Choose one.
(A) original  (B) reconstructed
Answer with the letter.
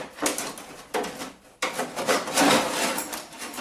B